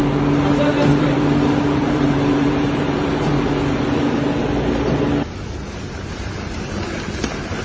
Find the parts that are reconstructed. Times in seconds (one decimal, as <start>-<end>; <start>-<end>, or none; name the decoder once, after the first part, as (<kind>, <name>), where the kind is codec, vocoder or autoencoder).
1.0-3.3 (vocoder, BigVGAN v2); 5.8-7.6